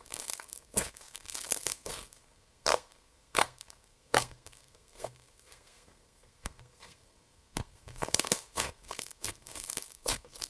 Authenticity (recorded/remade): remade